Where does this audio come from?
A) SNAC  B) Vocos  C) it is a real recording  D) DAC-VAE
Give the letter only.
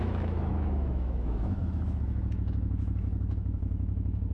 D